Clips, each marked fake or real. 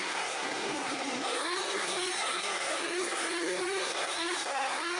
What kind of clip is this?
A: fake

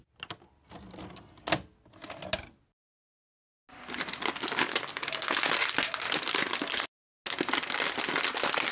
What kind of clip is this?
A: real